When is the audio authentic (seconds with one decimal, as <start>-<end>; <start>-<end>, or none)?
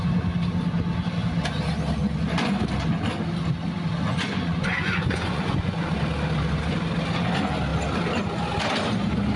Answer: 0.0-4.1; 5.9-9.4